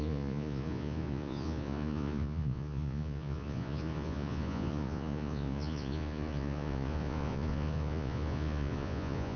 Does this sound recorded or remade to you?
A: remade